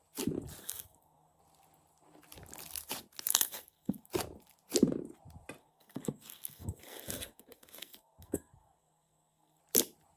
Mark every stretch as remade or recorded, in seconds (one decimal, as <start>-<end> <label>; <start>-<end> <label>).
0.0-0.6 recorded; 0.6-1.4 remade; 1.4-3.3 recorded; 3.3-4.1 remade; 4.1-5.6 recorded; 5.6-9.6 remade; 9.6-10.2 recorded